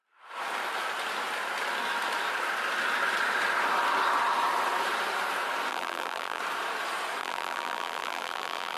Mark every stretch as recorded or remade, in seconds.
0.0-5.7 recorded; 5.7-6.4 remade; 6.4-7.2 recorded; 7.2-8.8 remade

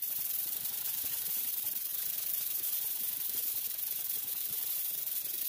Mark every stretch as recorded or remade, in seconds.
0.0-5.5 remade